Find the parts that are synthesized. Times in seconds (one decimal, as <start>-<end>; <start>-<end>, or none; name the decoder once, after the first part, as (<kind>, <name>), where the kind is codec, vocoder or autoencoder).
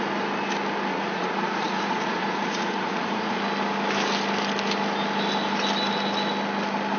0.9-3.4 (vocoder, Vocos)